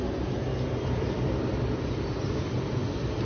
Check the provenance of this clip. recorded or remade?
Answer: recorded